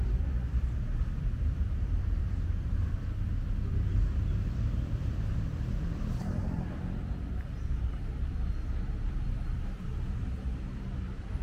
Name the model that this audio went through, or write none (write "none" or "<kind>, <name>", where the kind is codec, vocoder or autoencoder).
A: vocoder, BigVGAN v2